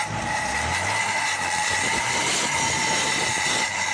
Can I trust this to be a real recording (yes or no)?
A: yes